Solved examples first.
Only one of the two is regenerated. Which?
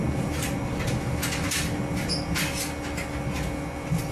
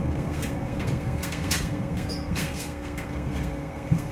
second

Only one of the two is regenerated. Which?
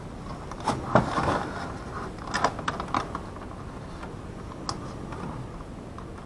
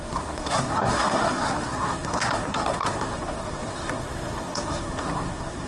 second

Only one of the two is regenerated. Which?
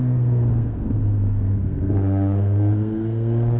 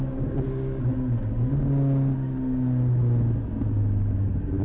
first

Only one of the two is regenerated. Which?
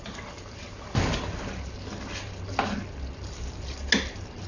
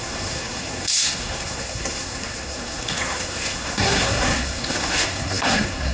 second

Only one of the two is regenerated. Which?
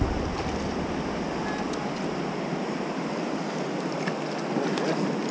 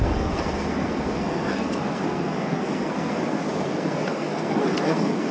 second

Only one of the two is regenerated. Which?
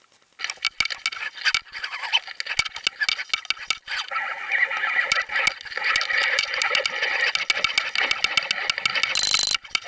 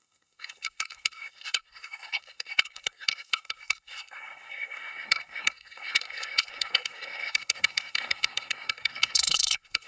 second